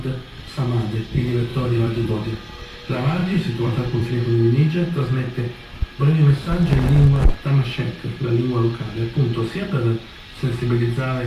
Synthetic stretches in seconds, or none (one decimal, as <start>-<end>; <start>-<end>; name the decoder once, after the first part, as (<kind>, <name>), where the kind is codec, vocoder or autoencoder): 1.5-2.1 (vocoder, BigVGAN v2); 3.2-4.1

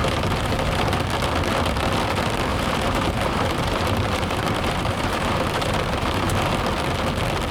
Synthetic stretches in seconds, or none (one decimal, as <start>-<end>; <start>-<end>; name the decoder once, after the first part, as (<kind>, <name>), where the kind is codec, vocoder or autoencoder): 0.0-0.9 (vocoder, BigVGAN v2); 2.5-6.5

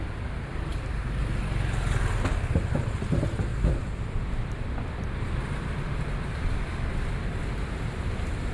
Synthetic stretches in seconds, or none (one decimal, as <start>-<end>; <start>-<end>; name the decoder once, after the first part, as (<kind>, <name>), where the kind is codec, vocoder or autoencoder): 0.7-1.2 (vocoder, BigVGAN v2); 3.5-6.6

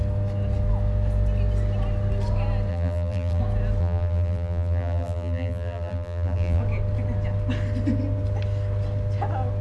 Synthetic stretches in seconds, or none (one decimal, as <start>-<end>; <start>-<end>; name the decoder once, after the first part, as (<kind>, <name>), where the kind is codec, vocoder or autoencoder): 2.7-3.4 (vocoder, BigVGAN v2); 3.8-6.6

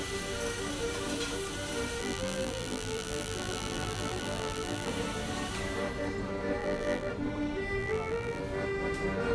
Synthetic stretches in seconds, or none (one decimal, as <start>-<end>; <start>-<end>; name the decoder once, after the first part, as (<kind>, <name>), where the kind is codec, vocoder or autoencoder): 2.0-4.9 (vocoder, BigVGAN v2); 6.6-7.1; 7.8-8.4